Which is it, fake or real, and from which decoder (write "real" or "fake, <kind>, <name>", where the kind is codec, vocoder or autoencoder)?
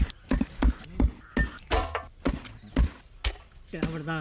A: real